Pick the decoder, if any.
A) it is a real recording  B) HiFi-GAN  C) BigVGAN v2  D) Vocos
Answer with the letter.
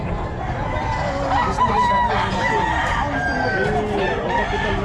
A